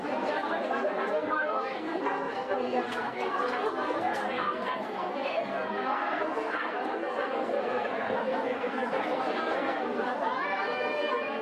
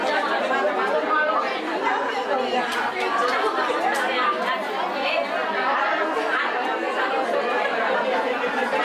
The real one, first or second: second